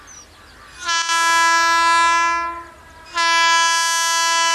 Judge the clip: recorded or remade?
recorded